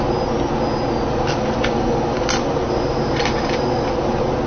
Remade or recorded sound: recorded